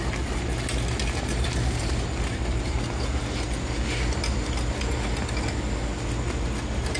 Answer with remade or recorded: recorded